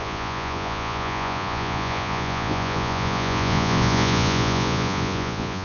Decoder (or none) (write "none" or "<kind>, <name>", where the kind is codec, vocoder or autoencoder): vocoder, Vocos